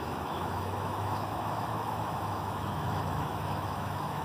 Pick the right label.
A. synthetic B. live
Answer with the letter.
A